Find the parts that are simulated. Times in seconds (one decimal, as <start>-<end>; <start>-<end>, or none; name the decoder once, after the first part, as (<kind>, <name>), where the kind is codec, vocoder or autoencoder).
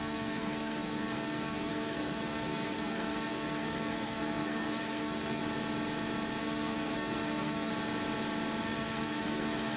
0.0-5.4 (codec, SNAC); 6.4-7.7; 8.6-9.8